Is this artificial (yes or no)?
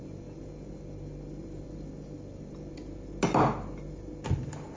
no